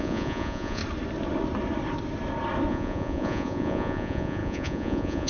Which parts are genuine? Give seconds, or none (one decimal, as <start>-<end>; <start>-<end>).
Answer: 0.8-2.7